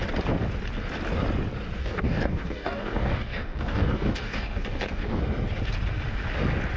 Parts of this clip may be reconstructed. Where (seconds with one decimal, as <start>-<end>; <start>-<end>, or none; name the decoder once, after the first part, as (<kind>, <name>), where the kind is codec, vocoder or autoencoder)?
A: 1.8-5.2 (codec, DAC)

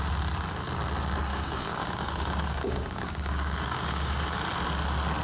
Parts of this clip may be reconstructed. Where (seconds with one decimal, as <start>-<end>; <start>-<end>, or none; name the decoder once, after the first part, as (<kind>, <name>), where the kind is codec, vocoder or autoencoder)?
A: 1.3-4.2 (codec, DAC)

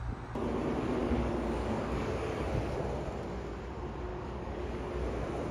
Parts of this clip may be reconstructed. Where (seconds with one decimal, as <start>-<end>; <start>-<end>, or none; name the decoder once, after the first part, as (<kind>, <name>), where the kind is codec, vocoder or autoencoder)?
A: 1.0-2.8 (codec, DAC); 4.1-4.9